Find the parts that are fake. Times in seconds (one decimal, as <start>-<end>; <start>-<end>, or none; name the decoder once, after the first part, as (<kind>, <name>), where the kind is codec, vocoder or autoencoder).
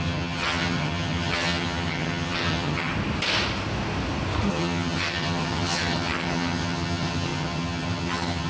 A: 0.0-2.9 (vocoder, HiFi-GAN); 4.5-8.5